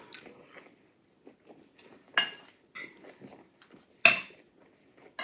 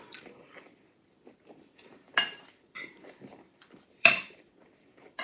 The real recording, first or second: first